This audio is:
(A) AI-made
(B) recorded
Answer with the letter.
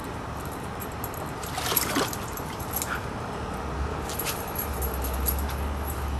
B